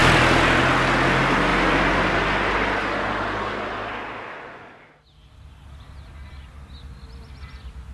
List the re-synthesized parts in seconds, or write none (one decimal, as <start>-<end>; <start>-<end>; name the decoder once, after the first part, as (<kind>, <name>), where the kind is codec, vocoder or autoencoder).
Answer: none